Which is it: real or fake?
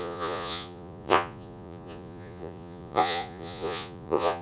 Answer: fake